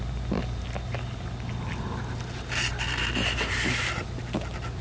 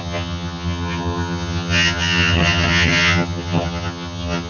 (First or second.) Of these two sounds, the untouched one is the first